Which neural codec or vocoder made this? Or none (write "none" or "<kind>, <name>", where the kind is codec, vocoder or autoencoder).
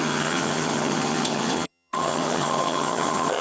vocoder, HiFi-GAN